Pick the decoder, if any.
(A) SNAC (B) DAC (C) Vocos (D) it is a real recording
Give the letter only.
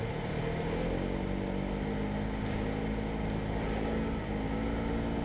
D